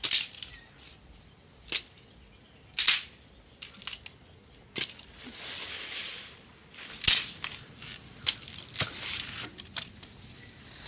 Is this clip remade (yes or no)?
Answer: no